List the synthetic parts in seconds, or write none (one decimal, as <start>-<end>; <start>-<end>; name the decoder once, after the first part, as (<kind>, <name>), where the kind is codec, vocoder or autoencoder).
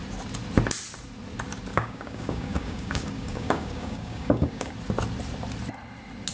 1.7-4.7 (codec, DAC)